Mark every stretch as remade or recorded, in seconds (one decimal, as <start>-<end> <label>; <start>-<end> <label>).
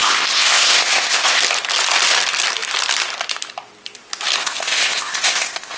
0.0-1.4 remade; 1.4-4.4 recorded; 4.4-5.8 remade